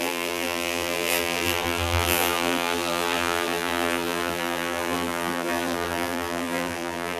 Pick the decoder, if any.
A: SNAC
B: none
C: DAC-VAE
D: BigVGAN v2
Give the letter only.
D